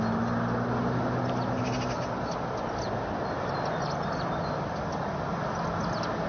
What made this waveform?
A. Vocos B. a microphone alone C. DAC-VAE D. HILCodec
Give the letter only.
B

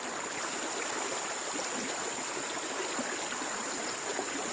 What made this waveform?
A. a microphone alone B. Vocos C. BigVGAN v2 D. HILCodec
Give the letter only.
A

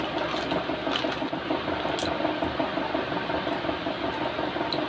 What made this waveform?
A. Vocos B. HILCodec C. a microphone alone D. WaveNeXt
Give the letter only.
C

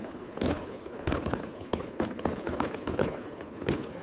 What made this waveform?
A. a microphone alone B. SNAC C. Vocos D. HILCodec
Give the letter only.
D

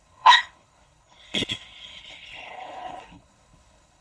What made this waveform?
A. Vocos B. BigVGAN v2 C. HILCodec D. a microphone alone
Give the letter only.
C